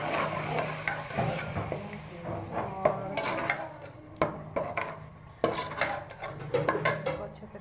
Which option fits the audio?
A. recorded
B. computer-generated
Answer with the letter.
A